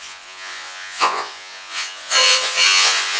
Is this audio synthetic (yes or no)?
yes